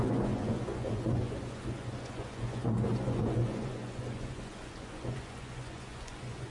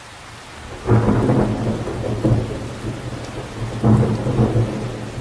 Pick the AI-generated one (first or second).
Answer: first